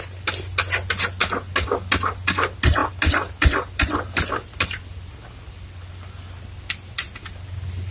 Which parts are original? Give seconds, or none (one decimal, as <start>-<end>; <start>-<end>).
0.0-2.8; 6.4-7.9